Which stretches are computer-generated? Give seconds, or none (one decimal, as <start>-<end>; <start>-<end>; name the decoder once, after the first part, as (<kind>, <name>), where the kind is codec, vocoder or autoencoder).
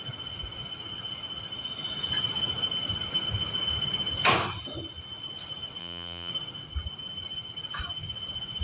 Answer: 5.8-6.3 (vocoder, BigVGAN v2)